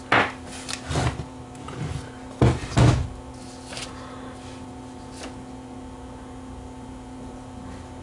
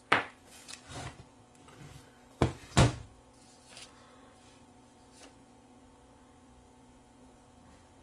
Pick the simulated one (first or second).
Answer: second